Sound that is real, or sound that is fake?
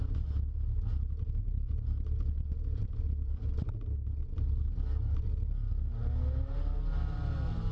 real